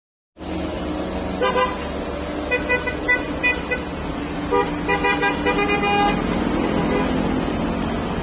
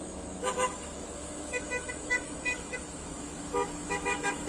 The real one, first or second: first